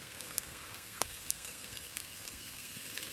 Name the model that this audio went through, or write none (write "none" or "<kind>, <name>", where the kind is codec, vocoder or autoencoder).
codec, SNAC